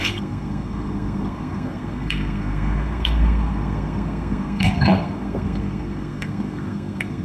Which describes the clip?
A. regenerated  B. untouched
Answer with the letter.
A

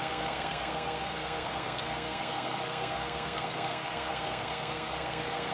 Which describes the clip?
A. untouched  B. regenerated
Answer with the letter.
B